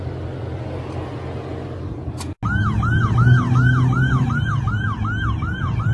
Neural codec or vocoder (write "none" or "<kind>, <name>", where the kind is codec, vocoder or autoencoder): none